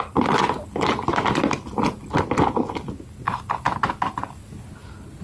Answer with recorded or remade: recorded